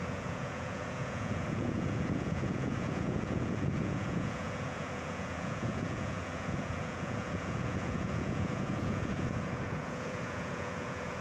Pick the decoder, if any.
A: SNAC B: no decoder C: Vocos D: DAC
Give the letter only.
C